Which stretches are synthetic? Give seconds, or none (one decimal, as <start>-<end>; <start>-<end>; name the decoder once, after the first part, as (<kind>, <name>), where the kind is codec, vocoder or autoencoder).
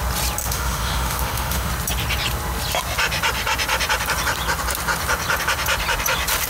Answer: 0.4-1.7 (autoencoder, DAC-VAE)